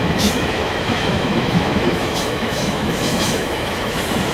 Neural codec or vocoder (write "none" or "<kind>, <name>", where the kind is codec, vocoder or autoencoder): autoencoder, DAC-VAE